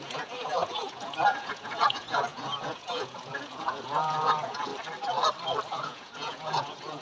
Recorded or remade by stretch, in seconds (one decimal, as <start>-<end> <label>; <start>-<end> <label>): 0.0-4.7 remade; 4.7-5.7 recorded; 5.7-7.0 remade